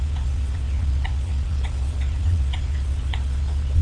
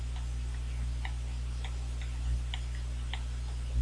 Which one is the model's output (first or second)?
first